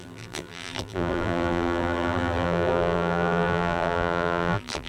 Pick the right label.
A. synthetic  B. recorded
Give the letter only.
A